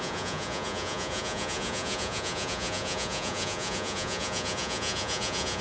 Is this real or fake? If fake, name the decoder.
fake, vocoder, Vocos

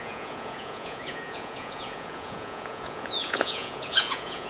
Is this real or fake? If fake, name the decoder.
fake, vocoder, Vocos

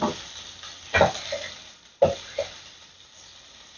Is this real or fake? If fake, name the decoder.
real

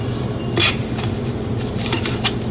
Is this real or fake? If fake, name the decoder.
real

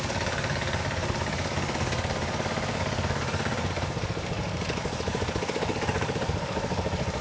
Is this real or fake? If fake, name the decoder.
fake, codec, DAC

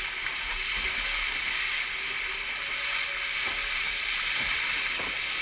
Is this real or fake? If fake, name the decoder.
real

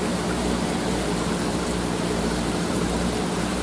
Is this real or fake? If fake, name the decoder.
fake, vocoder, BigVGAN v2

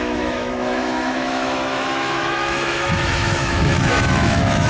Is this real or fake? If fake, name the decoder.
fake, autoencoder, DAC-VAE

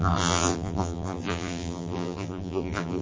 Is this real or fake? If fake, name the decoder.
fake, vocoder, BigVGAN v2